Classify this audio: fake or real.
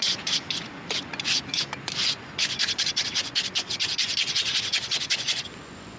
fake